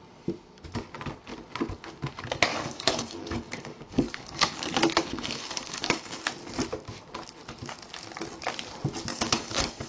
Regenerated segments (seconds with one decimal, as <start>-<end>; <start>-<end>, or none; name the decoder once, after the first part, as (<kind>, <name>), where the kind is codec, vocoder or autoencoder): 2.5-6.3 (codec, DAC); 9.1-9.9